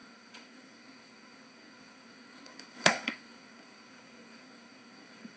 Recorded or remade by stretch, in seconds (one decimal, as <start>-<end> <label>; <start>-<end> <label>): 0.0-5.4 remade